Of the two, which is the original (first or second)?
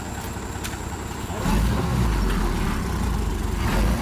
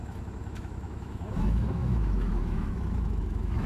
first